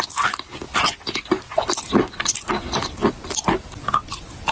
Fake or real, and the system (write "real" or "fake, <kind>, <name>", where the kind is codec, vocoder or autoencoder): real